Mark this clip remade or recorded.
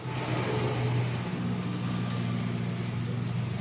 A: recorded